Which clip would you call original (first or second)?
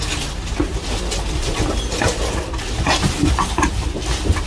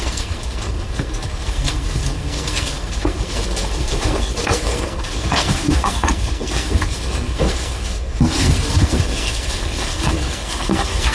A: first